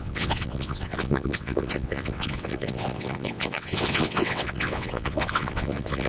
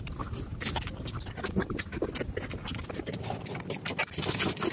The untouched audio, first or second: second